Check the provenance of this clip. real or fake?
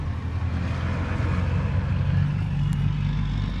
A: real